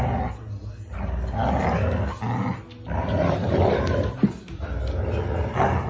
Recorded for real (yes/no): yes